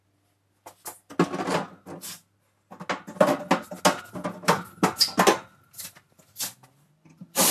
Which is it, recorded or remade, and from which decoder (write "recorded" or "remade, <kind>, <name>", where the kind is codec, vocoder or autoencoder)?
recorded